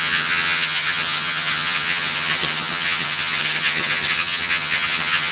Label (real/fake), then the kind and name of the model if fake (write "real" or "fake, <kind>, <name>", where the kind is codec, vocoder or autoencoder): fake, vocoder, HiFi-GAN